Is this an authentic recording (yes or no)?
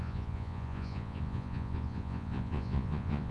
no